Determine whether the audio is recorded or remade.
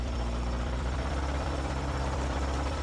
remade